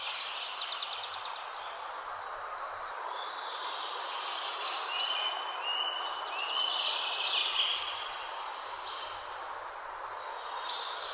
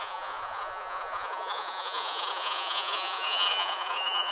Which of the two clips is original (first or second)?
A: first